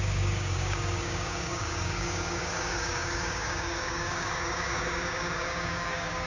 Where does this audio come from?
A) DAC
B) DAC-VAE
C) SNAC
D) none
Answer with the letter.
A